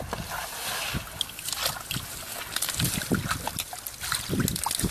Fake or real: real